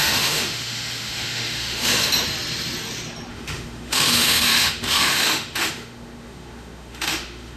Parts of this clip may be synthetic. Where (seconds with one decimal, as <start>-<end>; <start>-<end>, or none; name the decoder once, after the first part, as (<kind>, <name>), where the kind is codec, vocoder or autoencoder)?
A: 0.0-2.1 (autoencoder, DAC-VAE); 3.3-7.6